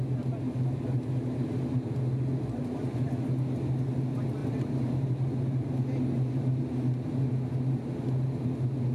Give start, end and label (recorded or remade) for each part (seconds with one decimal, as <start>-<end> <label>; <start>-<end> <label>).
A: 0.0-4.4 recorded; 4.4-7.2 remade; 7.2-8.9 recorded